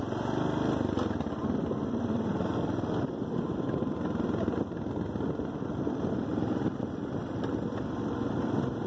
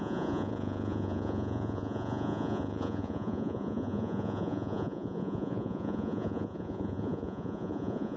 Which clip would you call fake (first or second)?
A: second